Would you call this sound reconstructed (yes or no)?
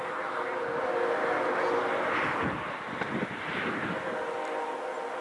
no